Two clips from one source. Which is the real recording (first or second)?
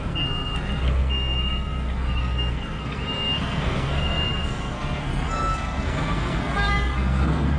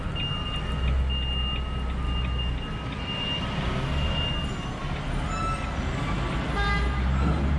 second